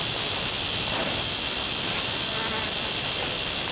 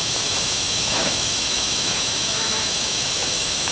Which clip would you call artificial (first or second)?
second